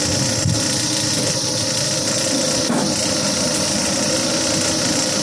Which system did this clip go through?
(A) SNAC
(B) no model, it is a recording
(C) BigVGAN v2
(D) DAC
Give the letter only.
B